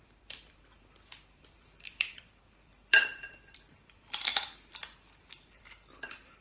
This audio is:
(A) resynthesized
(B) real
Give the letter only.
A